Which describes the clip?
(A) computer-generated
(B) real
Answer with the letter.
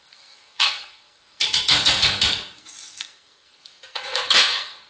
A